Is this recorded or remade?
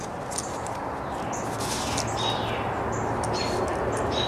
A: recorded